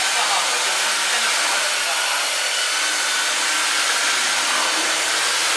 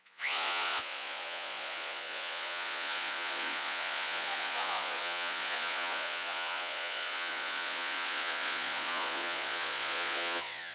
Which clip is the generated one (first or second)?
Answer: second